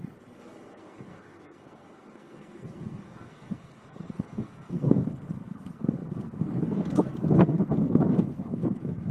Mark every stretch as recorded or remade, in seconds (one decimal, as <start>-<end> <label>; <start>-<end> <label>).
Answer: 0.0-9.1 remade